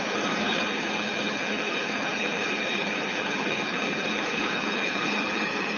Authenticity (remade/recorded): remade